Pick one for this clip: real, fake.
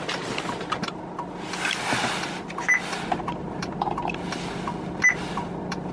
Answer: real